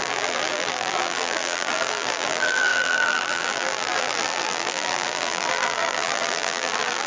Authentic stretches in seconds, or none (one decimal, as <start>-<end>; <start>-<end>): none